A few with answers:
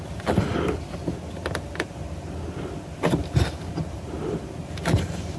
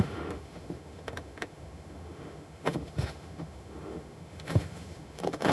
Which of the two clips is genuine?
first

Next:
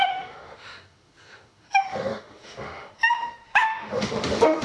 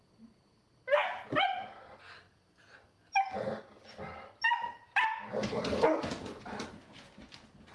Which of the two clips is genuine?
second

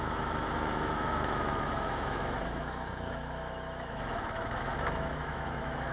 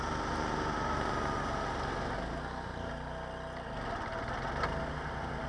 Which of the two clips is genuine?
second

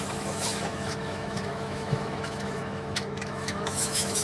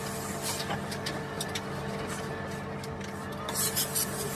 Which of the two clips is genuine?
second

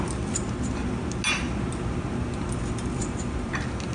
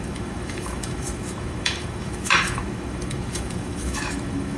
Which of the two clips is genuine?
first